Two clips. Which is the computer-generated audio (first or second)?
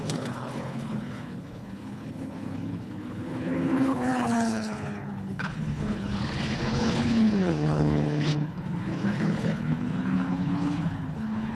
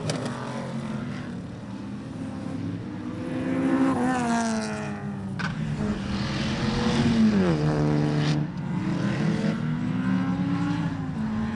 first